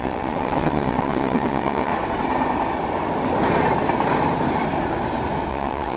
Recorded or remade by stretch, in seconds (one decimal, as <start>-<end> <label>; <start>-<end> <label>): 0.0-1.9 remade; 1.9-5.5 recorded; 5.5-6.0 remade